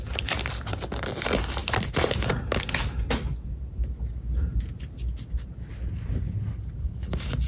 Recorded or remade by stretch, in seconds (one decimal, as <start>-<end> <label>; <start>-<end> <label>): 0.0-1.6 remade; 1.6-5.3 recorded; 5.3-7.5 remade